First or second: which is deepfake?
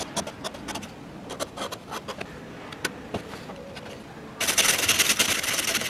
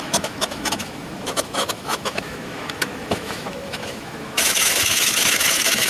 second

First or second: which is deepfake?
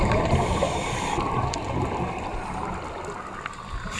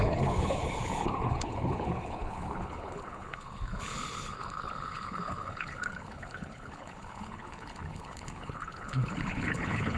second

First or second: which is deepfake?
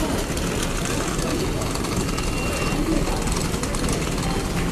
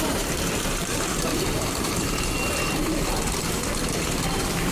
second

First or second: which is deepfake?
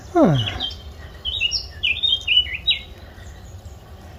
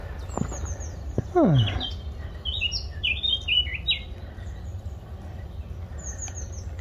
first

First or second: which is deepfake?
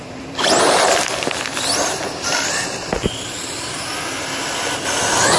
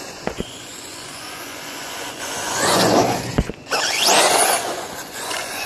second